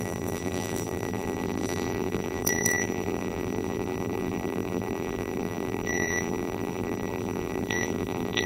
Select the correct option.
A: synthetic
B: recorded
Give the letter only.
A